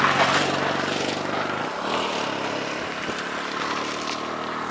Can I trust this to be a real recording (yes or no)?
yes